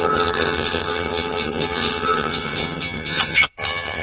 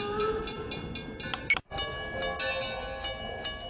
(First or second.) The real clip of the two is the second